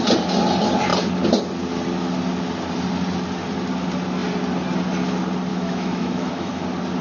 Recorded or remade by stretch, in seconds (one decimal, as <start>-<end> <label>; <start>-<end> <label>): 0.0-5.5 recorded; 5.5-6.6 remade; 6.6-7.0 recorded

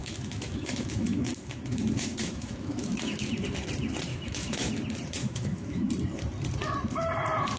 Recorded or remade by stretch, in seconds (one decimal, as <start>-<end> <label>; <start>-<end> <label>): 0.0-3.3 remade; 3.3-4.1 recorded; 4.1-4.7 remade; 4.7-5.2 recorded; 5.2-5.9 remade; 5.9-7.6 recorded

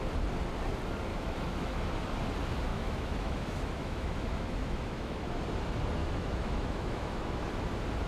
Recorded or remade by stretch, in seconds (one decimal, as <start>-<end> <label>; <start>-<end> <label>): 0.0-1.1 recorded; 1.1-1.8 remade; 1.8-2.7 recorded; 2.7-5.2 remade; 5.2-6.0 recorded; 6.0-7.5 remade; 7.5-8.1 recorded

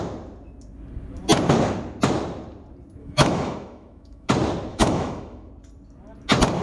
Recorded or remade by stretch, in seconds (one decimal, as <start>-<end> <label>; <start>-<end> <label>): 0.0-3.0 recorded; 3.0-4.3 remade; 4.3-4.7 recorded; 4.7-5.5 remade; 5.5-6.6 recorded

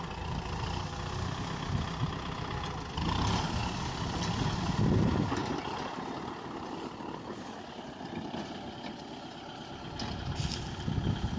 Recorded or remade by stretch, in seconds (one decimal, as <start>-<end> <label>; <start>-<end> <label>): 0.0-11.4 recorded

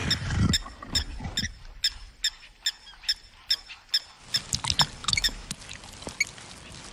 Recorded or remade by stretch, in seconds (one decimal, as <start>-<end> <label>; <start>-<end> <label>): 0.0-5.0 recorded; 5.0-5.5 remade; 5.5-6.9 recorded

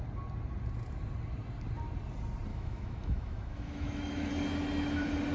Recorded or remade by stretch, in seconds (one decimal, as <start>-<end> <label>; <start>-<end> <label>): 0.0-2.5 recorded; 2.5-4.3 remade; 4.3-5.3 recorded